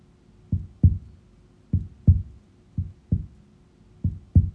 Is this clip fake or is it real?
real